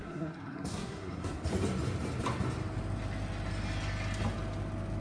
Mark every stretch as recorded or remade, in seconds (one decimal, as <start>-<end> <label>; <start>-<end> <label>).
0.0-1.4 remade; 1.4-5.0 recorded